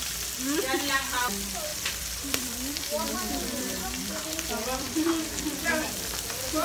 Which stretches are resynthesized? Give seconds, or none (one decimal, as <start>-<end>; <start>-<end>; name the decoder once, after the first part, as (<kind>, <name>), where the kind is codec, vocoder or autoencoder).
1.7-5.7 (vocoder, BigVGAN v2)